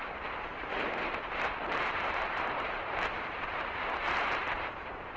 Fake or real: fake